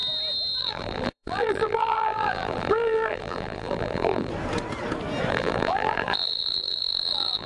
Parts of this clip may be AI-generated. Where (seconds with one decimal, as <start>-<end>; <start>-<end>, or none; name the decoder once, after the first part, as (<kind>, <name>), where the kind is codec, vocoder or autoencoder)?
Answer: 0.6-4.3 (vocoder, BigVGAN v2); 5.3-7.5